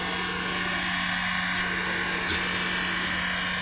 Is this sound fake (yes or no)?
no